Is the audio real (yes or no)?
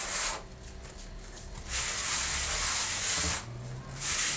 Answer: yes